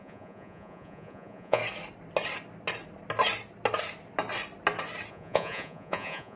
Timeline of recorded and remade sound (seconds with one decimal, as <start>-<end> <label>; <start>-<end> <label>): 0.0-1.6 remade; 1.6-5.1 recorded; 5.1-6.4 remade